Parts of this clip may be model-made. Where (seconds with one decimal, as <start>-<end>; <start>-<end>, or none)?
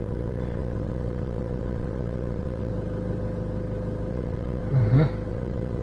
0.0-2.7; 4.1-4.6; 5.3-5.8